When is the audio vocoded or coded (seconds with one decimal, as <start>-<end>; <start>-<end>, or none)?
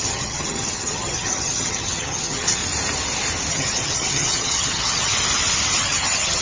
0.0-2.6; 3.5-5.1; 5.8-6.4